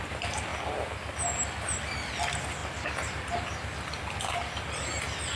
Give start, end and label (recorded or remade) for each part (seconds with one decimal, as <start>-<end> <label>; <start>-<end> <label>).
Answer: 0.0-5.4 recorded